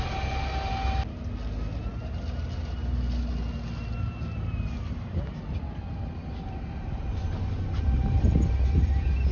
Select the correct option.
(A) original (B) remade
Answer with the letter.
A